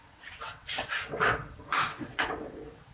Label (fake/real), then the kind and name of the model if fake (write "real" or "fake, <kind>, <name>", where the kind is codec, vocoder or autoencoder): fake, vocoder, WaveNeXt